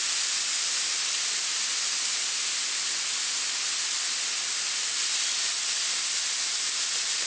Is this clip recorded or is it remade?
recorded